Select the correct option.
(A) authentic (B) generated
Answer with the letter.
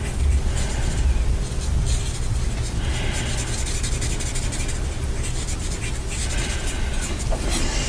A